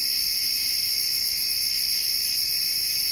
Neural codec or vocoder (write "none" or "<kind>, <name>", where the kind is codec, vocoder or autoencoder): none